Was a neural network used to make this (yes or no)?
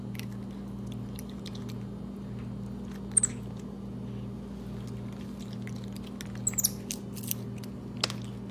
no